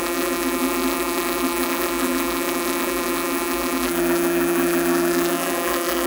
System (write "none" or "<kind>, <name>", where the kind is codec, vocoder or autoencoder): vocoder, BigVGAN v2